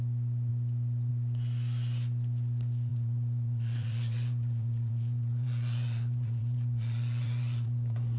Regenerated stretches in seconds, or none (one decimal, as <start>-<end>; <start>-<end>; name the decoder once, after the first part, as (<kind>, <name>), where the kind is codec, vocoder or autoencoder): 2.9-8.2 (vocoder, Vocos)